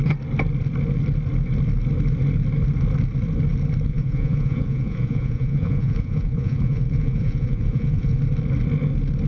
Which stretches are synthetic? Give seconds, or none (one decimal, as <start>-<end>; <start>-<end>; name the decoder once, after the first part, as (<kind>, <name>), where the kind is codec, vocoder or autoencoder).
3.9-8.2 (vocoder, Vocos)